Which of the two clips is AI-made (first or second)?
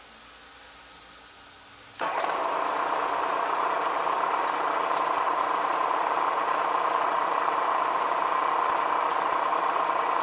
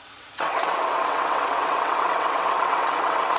second